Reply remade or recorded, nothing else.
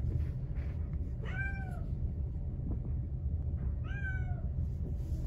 recorded